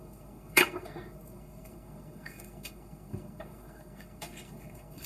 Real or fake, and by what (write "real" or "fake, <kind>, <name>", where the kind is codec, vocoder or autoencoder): fake, codec, SNAC